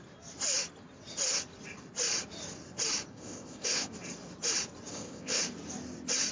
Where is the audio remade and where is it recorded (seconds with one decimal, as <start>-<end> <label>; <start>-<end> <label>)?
0.0-3.1 recorded; 3.1-3.9 remade; 3.9-4.9 recorded; 4.9-5.4 remade; 5.4-6.3 recorded